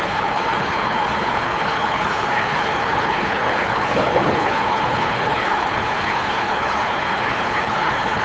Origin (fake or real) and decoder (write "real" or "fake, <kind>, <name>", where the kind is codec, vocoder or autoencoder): fake, codec, HILCodec